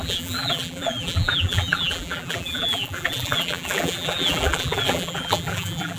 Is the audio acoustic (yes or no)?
no